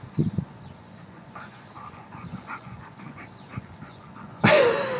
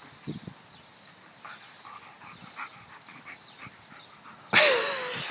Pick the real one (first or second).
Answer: second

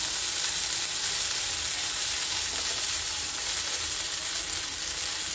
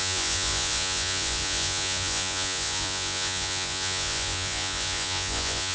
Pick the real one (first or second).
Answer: first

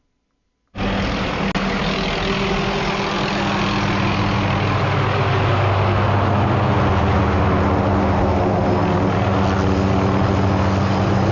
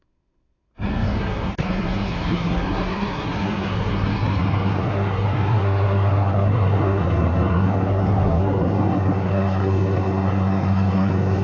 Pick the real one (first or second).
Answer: first